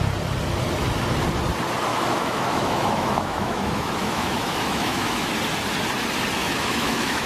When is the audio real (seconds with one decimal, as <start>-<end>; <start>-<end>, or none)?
0.0-1.9; 5.3-6.4